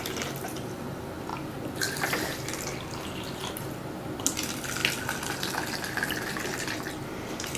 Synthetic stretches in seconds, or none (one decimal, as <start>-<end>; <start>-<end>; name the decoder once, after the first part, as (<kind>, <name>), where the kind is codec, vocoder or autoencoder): none